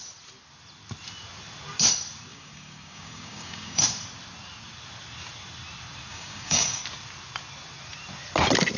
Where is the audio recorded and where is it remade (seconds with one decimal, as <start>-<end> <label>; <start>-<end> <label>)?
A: 0.0-2.3 recorded; 2.3-3.8 remade; 3.8-6.1 recorded; 6.1-6.8 remade; 6.8-8.8 recorded